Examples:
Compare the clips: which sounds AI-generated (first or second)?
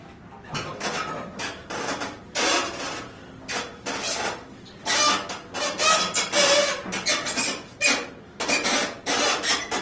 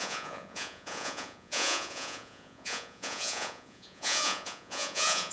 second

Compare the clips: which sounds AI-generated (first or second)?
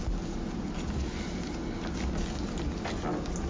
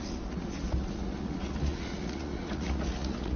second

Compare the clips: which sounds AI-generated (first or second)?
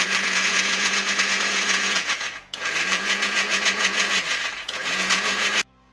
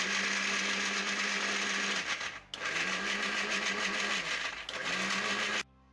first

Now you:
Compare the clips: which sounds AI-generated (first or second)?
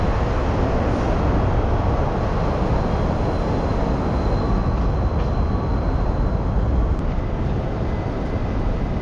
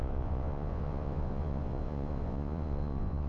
second